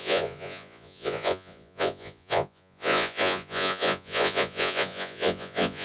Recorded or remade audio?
remade